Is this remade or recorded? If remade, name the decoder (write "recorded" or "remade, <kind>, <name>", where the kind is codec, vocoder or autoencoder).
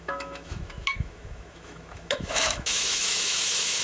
remade, autoencoder, DAC-VAE